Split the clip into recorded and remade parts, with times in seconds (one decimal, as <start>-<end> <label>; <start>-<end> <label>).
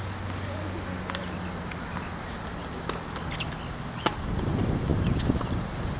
0.0-6.0 recorded